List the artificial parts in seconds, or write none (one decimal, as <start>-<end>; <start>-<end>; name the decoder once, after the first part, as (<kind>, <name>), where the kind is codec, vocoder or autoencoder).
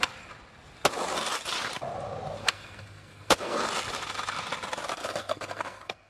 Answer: 2.4-3.6 (codec, SNAC); 5.0-6.1